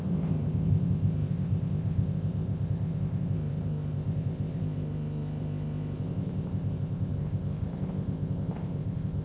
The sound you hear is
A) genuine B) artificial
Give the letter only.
B